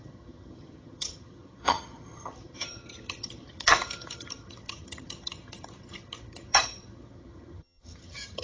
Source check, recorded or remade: remade